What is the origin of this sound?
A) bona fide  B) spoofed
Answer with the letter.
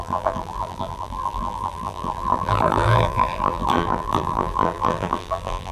B